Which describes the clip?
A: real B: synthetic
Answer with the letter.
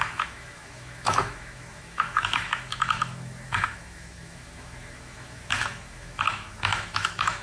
B